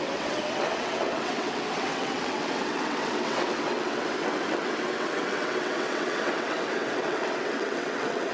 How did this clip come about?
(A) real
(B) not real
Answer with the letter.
B